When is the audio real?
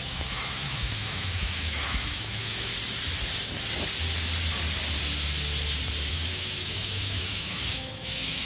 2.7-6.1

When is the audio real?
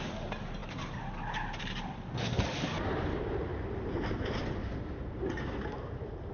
0.0-6.3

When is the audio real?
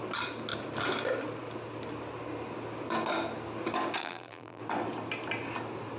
0.0-4.0; 4.6-6.0